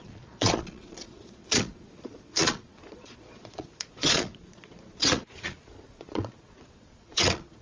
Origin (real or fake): fake